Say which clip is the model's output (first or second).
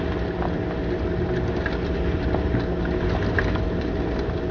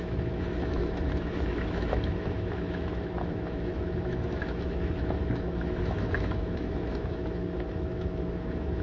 second